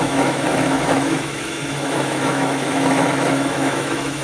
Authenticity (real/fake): fake